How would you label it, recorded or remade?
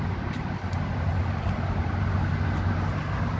recorded